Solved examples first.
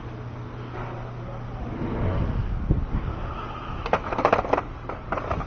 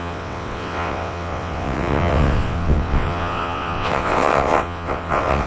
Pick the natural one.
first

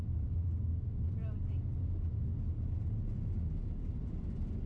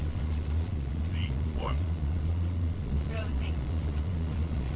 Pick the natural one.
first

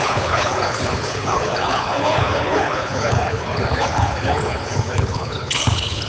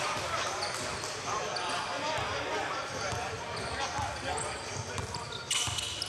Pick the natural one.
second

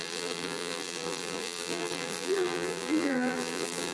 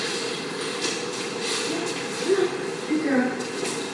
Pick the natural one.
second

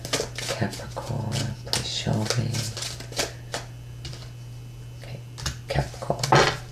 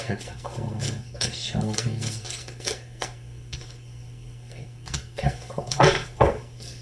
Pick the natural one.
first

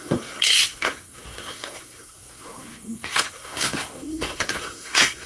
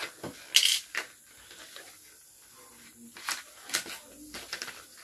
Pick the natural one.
second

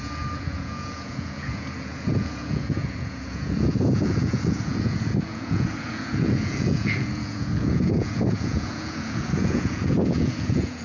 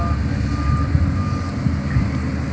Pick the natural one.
second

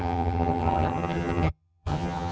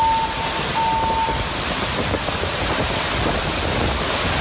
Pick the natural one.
second